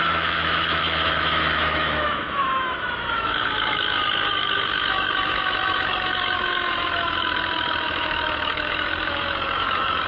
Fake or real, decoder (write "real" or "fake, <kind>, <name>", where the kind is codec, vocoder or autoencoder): fake, autoencoder, DAC-VAE